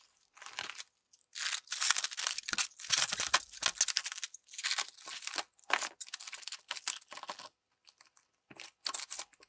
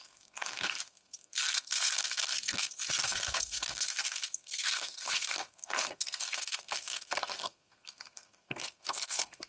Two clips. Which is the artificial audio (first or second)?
second